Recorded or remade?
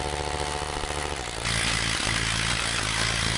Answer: recorded